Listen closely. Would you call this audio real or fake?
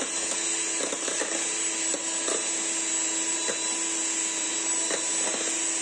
real